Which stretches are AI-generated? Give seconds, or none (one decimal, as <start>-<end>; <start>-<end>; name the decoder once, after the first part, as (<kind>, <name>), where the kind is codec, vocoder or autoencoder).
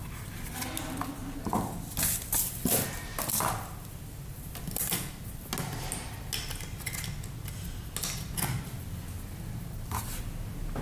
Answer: none